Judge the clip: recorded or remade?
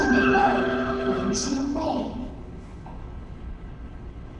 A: remade